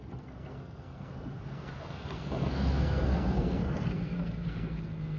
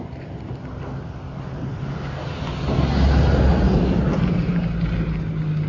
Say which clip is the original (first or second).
second